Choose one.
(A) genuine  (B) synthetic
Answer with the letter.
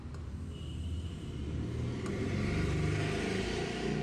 A